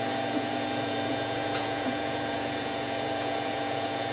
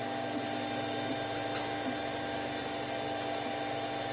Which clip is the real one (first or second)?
second